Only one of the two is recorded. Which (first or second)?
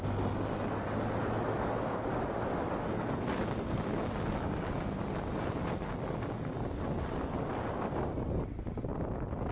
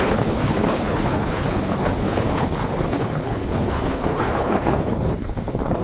first